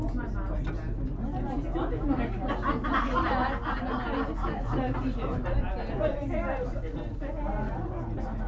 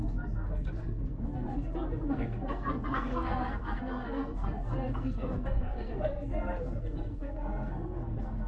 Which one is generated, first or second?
second